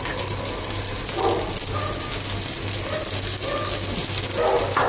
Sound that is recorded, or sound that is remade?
recorded